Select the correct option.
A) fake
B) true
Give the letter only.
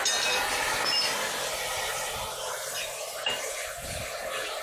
B